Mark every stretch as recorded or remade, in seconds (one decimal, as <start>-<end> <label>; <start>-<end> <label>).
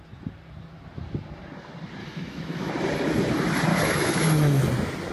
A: 0.0-2.0 recorded; 2.0-2.7 remade; 2.7-3.7 recorded; 3.7-4.6 remade; 4.6-5.1 recorded